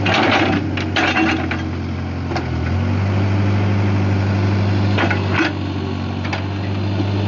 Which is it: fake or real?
real